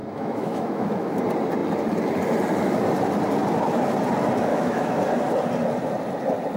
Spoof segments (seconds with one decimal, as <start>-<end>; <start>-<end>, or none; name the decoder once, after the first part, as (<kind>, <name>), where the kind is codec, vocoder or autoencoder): 0.0-1.2 (autoencoder, DAC-VAE); 4.5-5.0